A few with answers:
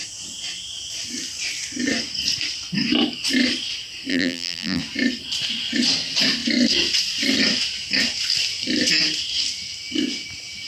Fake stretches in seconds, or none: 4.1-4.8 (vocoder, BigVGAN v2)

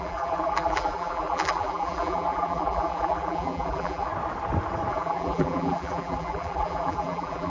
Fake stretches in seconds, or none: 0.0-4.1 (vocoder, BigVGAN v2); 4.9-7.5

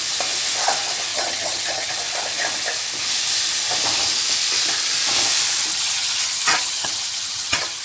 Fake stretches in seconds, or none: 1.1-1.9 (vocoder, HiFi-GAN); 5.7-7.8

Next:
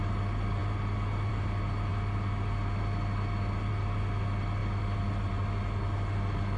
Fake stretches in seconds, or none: none